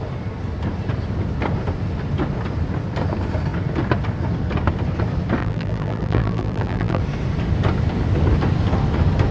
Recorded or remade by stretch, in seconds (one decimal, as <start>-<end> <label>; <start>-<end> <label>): 0.0-5.4 recorded; 5.4-7.0 remade; 7.0-9.3 recorded